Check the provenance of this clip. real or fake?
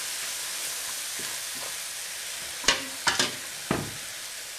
real